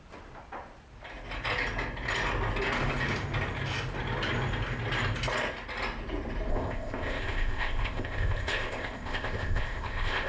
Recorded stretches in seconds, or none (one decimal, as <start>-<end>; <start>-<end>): 0.0-6.5